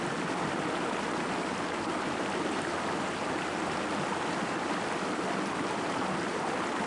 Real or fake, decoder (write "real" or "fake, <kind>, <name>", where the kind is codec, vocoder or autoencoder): real